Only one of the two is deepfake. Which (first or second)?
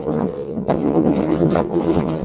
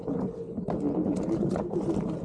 first